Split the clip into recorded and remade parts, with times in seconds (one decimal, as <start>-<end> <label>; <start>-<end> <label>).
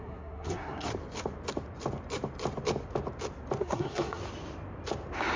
0.0-0.9 remade; 0.9-3.6 recorded; 3.6-4.2 remade; 4.2-5.4 recorded